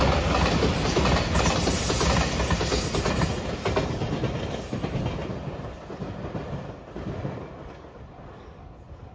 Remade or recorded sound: recorded